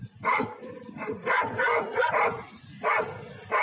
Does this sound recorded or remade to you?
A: recorded